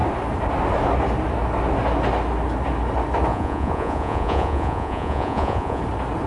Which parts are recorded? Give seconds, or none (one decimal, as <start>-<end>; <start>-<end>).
0.0-3.3; 5.8-6.3